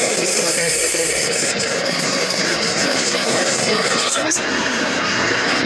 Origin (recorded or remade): remade